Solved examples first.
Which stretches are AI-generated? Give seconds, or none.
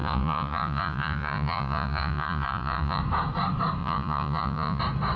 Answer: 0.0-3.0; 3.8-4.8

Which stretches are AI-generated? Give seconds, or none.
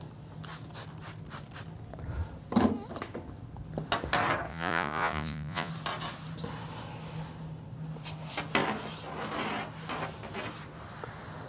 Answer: 4.5-5.7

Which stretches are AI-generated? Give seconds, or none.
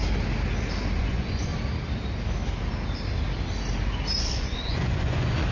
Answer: 1.0-1.5; 4.2-5.5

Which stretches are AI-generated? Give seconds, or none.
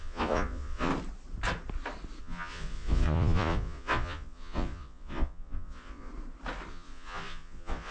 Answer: 0.0-0.9; 2.2-6.1; 6.7-7.9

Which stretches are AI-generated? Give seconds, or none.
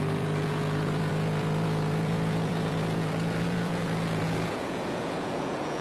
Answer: 0.0-5.8